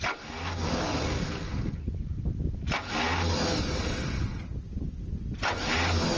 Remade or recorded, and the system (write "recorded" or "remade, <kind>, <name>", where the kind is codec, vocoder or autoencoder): recorded